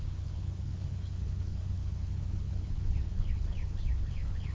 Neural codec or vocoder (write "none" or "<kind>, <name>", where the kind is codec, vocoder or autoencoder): codec, HILCodec